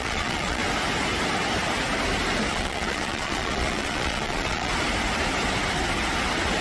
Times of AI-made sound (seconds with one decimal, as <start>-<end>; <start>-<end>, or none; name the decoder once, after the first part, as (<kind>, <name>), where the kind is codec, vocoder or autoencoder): 0.0-0.6 (vocoder, Vocos); 2.5-4.7